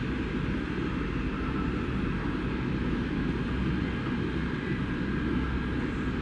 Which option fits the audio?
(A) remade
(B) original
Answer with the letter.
B